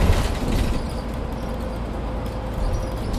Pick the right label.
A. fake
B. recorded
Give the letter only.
B